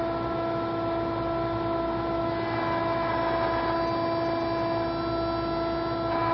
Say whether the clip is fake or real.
real